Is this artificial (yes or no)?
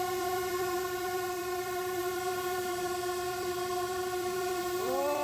yes